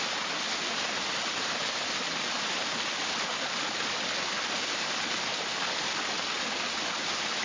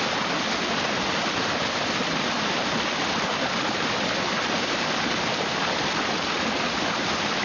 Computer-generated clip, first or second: second